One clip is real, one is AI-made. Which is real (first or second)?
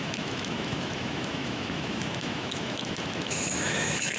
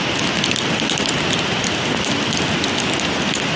second